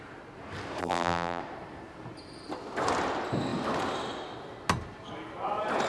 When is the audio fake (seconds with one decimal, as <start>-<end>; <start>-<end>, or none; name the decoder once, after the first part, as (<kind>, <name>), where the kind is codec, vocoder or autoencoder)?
0.8-1.4 (vocoder, BigVGAN v2)